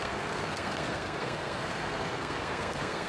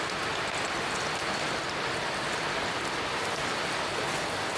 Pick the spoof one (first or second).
first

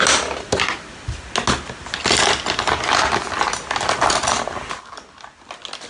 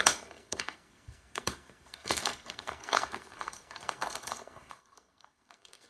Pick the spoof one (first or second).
second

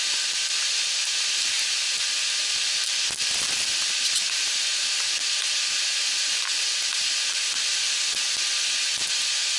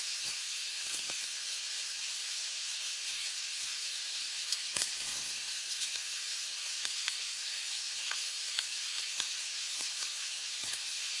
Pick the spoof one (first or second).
second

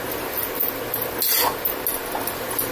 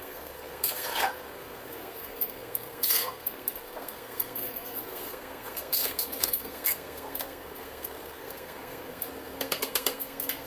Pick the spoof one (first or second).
second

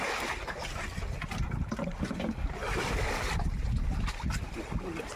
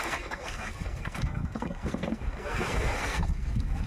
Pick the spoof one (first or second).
second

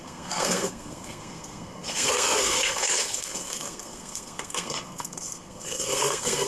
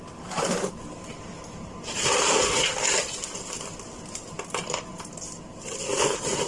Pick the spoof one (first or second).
first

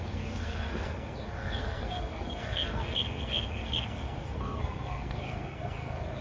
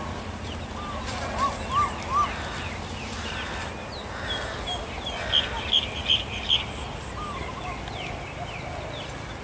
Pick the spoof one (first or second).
first